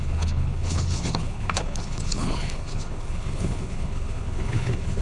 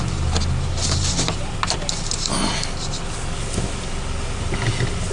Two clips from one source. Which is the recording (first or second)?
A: second